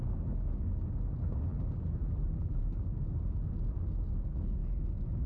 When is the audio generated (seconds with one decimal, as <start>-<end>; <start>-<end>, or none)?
1.5-2.6